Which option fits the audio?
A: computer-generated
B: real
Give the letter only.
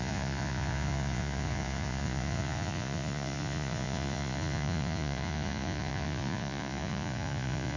A